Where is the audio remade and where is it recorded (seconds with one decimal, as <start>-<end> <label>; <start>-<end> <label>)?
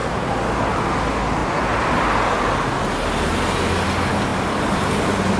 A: 0.0-5.4 recorded